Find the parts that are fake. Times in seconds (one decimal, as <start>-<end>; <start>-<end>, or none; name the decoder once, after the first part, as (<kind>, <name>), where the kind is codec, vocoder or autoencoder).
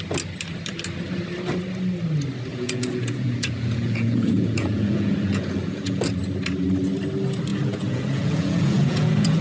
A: 2.5-6.0 (vocoder, Vocos); 7.5-9.4